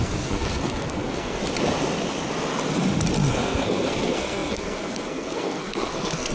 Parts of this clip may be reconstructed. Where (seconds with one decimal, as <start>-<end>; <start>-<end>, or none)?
0.0-1.4; 3.3-6.3